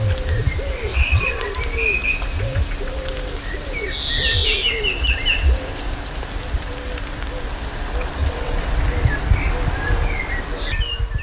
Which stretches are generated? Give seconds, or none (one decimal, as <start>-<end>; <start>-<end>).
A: 0.9-1.5; 8.2-8.8